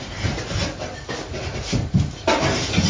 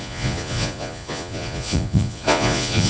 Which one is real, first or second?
first